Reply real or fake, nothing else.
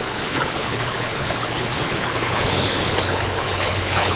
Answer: fake